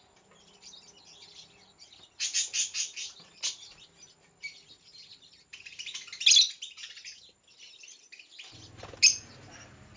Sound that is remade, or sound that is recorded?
recorded